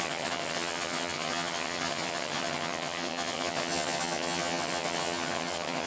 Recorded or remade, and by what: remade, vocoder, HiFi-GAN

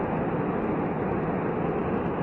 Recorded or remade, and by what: recorded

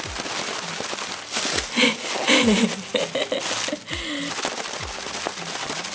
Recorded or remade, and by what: recorded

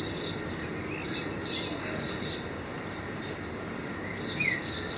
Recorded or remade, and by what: recorded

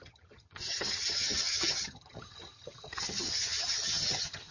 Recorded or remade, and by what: remade, vocoder, HiFi-GAN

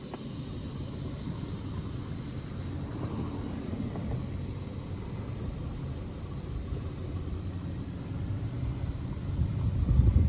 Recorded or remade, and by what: recorded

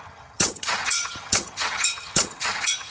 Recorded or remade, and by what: remade, vocoder, HiFi-GAN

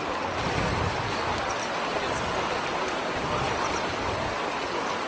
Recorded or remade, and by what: recorded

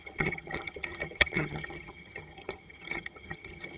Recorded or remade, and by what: remade, vocoder, HiFi-GAN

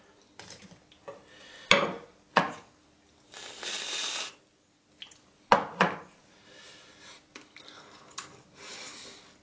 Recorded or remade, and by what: recorded